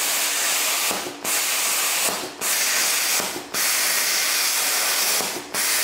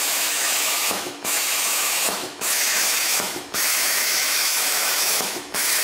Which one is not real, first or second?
second